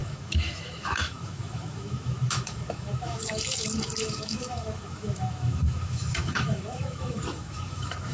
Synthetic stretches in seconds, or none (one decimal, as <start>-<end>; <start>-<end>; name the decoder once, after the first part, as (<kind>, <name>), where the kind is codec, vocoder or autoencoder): 0.0-8.1 (autoencoder, DAC-VAE)